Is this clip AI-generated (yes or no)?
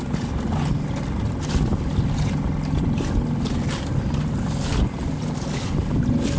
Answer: no